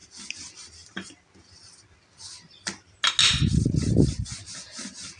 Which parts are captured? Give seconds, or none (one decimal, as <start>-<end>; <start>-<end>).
0.0-5.2